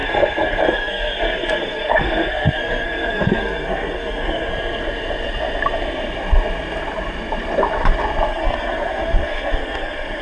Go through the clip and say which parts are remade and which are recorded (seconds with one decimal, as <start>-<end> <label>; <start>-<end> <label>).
0.0-4.5 remade; 4.5-8.3 recorded; 8.3-10.2 remade